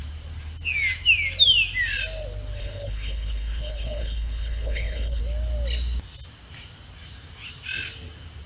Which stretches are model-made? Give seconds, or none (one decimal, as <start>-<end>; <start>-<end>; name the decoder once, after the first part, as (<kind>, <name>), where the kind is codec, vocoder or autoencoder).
2.6-5.2 (codec, HILCodec)